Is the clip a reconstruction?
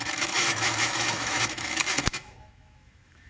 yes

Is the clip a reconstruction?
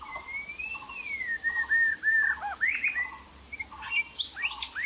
no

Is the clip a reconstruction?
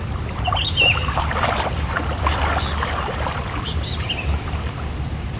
yes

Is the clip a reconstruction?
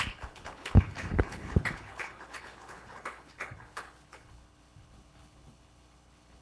yes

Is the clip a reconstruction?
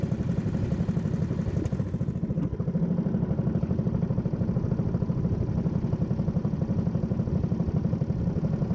no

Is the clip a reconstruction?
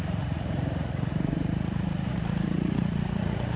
yes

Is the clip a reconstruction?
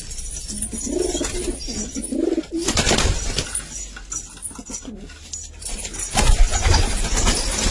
no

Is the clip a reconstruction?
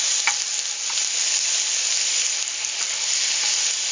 no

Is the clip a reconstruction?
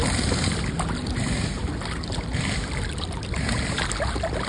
no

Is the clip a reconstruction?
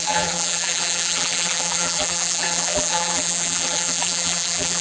yes